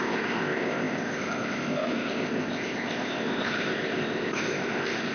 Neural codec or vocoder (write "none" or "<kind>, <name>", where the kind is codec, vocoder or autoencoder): codec, ZipCodec